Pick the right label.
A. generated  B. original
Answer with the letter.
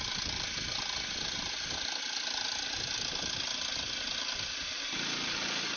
B